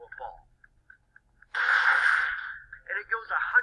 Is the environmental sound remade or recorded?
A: recorded